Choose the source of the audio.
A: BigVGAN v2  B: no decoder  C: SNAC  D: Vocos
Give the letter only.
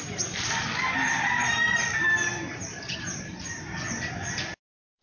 A